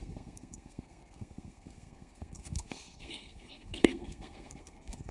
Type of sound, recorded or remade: remade